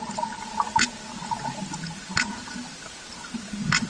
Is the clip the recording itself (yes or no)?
yes